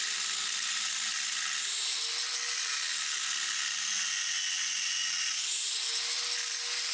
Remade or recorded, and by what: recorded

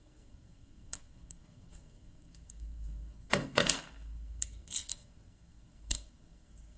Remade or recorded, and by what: remade, codec, SNAC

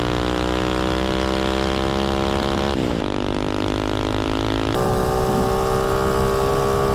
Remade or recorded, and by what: recorded